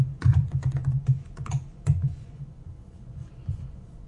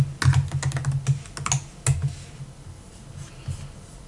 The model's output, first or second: first